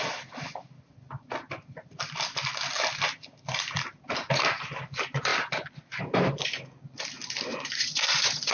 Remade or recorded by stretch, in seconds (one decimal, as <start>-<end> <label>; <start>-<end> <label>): 0.0-7.5 recorded; 7.5-8.5 remade